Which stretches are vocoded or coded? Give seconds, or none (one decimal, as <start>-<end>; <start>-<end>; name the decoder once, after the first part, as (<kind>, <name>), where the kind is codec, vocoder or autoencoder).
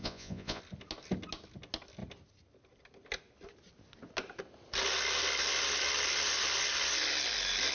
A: 0.0-0.6 (vocoder, Vocos)